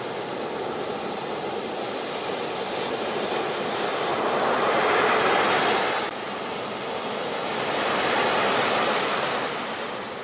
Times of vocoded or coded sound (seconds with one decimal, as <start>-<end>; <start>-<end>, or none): none